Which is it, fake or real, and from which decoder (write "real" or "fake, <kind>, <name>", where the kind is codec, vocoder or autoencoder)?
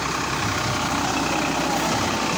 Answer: real